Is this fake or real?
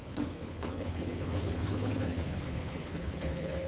fake